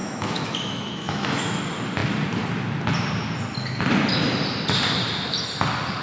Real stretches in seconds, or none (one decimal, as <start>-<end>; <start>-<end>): 1.6-6.0